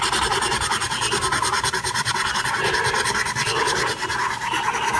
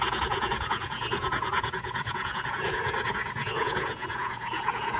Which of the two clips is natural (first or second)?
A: first